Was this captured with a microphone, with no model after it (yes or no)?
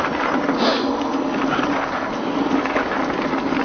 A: yes